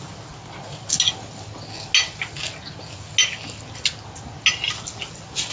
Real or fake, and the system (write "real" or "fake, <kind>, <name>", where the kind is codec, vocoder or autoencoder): real